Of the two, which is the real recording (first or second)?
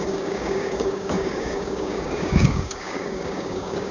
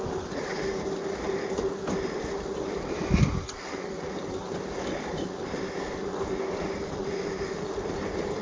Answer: second